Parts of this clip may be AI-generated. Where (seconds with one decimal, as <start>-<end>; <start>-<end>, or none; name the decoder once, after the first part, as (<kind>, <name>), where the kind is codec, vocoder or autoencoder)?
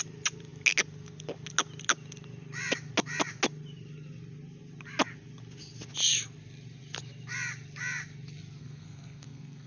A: 8.6-9.7 (codec, SNAC)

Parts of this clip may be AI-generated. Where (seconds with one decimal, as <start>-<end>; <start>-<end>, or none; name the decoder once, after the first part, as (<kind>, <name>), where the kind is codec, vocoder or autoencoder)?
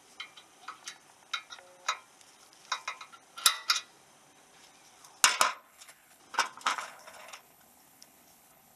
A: 5.5-6.2 (codec, HILCodec); 6.7-8.8